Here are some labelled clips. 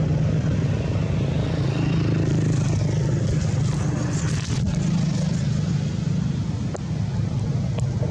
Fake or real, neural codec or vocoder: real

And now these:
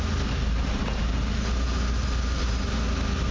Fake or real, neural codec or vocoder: real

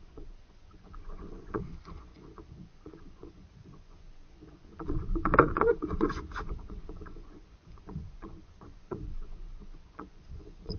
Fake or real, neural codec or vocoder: fake, vocoder, Vocos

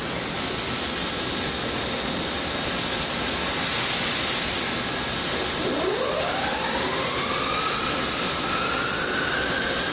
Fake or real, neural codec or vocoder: real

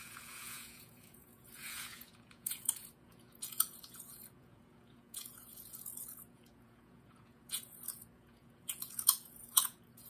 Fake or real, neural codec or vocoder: fake, vocoder, Vocos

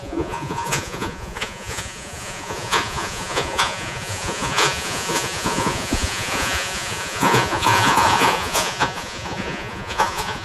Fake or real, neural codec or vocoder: fake, vocoder, Vocos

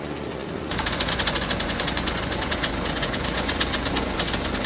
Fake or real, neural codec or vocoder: fake, vocoder, Vocos